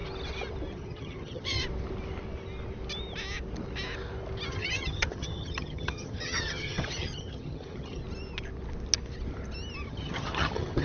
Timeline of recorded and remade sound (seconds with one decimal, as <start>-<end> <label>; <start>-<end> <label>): 0.0-0.7 recorded; 0.7-1.6 remade; 1.6-4.5 recorded; 4.5-8.0 remade; 8.0-9.9 recorded; 9.9-10.8 remade